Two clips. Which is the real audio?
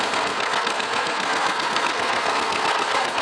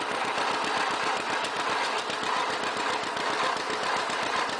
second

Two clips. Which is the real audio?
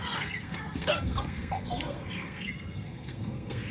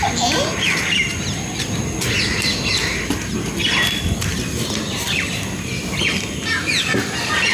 second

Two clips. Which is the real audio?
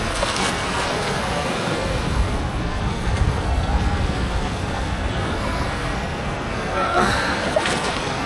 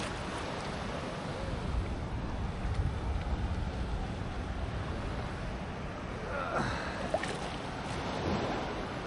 second